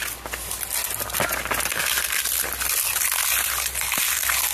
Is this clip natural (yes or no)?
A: yes